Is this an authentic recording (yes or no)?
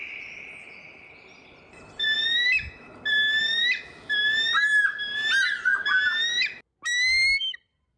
yes